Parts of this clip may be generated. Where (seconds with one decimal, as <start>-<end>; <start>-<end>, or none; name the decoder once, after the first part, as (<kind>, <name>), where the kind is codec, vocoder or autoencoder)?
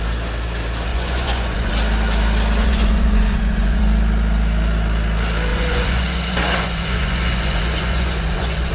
0.9-1.7 (vocoder, Vocos); 2.6-3.8; 5.5-8.7